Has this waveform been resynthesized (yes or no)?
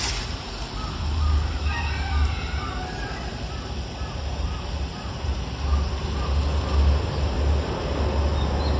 no